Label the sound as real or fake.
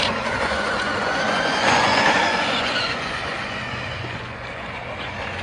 fake